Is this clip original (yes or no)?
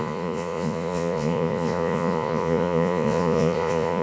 no